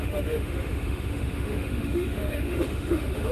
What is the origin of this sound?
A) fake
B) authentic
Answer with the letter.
A